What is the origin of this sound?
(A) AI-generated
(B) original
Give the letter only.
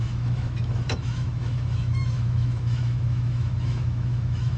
A